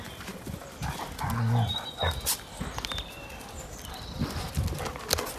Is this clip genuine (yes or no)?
yes